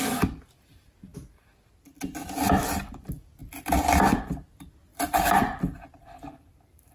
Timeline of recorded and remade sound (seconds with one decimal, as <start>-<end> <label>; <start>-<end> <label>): 0.0-6.9 recorded